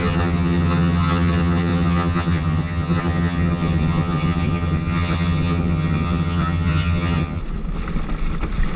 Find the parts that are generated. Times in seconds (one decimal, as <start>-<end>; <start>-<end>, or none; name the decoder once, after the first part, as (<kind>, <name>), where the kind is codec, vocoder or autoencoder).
0.0-7.4 (vocoder, HiFi-GAN)